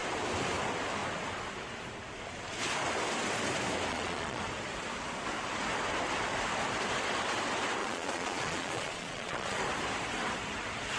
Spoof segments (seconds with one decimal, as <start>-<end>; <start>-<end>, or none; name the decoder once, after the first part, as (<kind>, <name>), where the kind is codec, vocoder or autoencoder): 3.9-4.4 (vocoder, Vocos); 7.8-9.6